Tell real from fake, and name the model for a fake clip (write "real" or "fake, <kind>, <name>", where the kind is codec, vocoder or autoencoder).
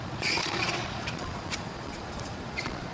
fake, vocoder, Vocos